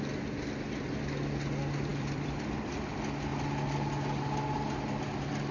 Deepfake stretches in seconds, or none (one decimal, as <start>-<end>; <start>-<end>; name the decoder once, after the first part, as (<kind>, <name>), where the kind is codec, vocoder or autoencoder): 1.9-2.9 (vocoder, BigVGAN v2)